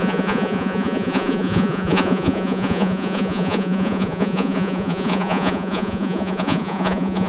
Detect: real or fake fake